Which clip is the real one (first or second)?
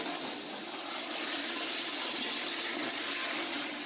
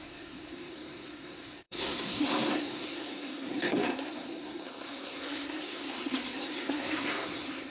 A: first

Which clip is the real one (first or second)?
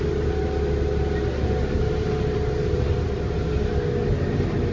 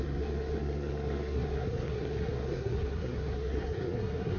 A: first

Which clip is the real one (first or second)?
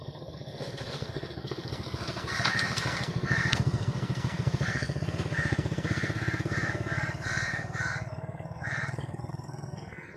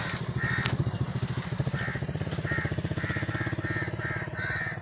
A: second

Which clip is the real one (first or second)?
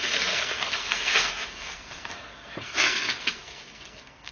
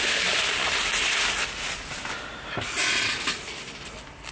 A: second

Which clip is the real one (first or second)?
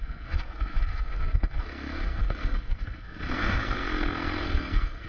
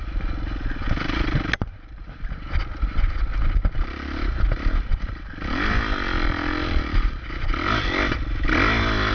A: second